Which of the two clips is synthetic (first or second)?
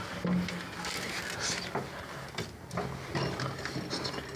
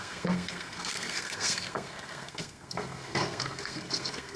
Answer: second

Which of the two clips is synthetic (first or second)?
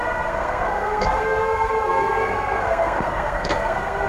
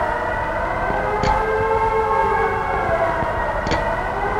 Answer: first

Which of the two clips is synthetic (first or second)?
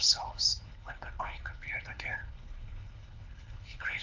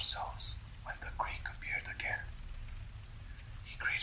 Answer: first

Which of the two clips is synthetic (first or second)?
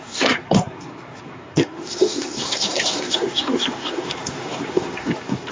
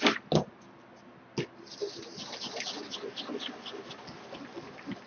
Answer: first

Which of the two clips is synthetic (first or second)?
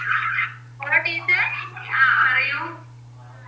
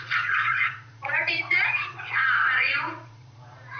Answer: second